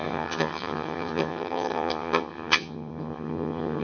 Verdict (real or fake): fake